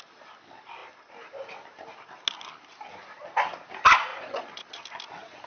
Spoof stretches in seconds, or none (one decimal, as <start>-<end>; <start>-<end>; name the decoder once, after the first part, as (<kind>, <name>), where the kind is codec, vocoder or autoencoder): 4.1-4.8 (vocoder, Vocos)